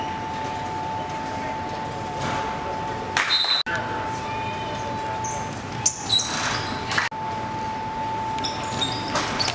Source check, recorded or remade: recorded